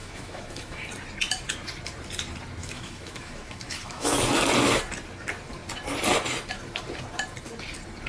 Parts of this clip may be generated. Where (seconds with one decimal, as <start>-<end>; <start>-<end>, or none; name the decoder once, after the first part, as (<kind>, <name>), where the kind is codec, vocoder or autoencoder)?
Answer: 0.0-0.9 (autoencoder, DAC-VAE); 2.6-4.2